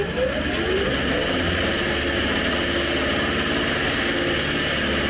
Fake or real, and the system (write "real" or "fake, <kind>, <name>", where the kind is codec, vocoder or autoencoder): real